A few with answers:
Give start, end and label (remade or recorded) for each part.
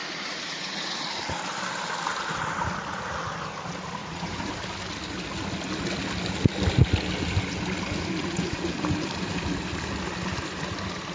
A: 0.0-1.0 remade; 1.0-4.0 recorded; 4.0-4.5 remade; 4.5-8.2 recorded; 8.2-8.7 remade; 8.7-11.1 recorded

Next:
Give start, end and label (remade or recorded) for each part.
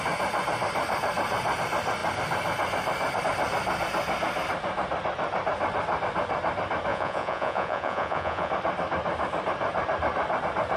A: 0.0-6.9 recorded; 6.9-8.5 remade; 8.5-10.8 recorded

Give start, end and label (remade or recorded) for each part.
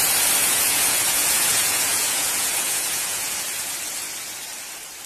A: 0.0-0.4 recorded; 0.4-3.5 remade; 3.5-5.1 recorded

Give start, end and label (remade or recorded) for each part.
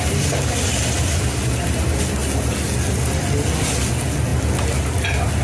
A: 0.0-5.4 recorded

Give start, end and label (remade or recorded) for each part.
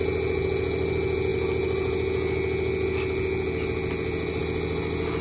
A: 0.0-5.2 recorded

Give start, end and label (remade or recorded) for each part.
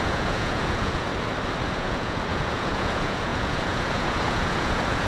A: 0.0-1.1 remade; 1.1-1.7 recorded; 1.7-5.1 remade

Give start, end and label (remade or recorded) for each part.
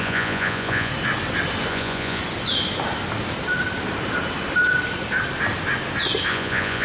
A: 0.0-0.9 remade; 0.9-1.7 recorded; 1.7-2.2 remade; 2.2-6.3 recorded; 6.3-6.8 remade